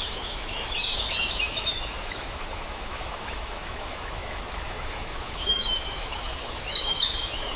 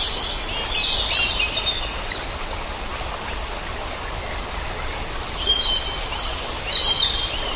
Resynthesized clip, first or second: first